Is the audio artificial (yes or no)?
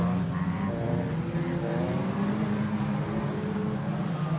no